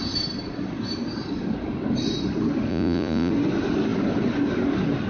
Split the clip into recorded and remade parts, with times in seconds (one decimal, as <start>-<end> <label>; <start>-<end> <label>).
0.0-2.7 recorded; 2.7-3.3 remade; 3.3-5.1 recorded

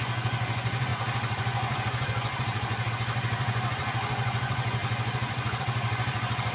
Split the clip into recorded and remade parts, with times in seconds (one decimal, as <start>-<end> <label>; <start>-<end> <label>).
0.0-6.5 remade

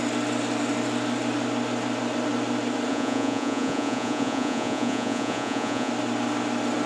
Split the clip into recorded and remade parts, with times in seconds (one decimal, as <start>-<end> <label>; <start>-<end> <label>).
0.0-2.9 recorded; 2.9-5.9 remade; 5.9-6.9 recorded

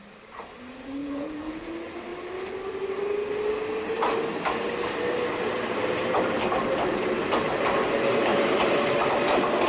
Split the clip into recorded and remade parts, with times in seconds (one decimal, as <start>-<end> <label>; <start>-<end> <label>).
0.0-1.0 recorded; 1.0-1.7 remade; 1.7-9.7 recorded

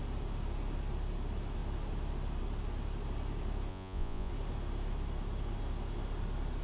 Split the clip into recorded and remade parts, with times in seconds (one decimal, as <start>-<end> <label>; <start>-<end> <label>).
0.0-3.7 recorded; 3.7-4.3 remade; 4.3-6.6 recorded

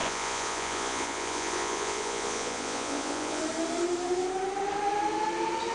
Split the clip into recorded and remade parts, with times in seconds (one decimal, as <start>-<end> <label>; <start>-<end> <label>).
0.0-3.4 remade; 3.4-5.7 recorded

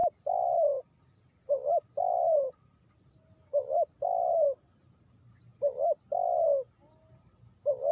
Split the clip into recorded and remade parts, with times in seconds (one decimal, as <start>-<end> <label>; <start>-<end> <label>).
0.0-7.9 recorded

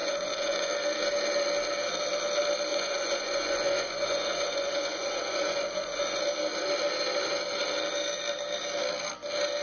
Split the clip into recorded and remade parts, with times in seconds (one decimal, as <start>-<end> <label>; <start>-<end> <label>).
0.0-0.7 remade; 0.7-2.7 recorded; 2.7-6.2 remade; 6.2-9.6 recorded